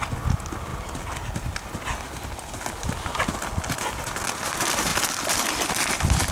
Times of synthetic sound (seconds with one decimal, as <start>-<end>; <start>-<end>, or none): none